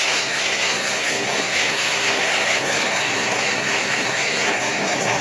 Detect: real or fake fake